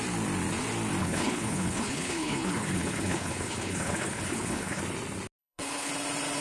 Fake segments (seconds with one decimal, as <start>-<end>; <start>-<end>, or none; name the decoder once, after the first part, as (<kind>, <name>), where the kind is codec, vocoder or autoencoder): 1.0-4.8 (codec, HILCodec); 5.4-5.9